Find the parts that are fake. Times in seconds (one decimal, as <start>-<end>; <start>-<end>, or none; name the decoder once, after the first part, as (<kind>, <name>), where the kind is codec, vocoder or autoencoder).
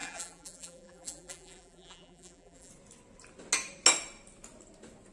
0.0-2.7 (vocoder, BigVGAN v2)